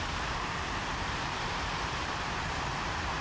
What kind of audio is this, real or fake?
fake